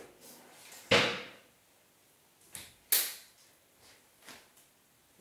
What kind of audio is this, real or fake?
real